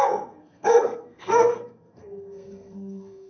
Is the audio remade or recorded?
remade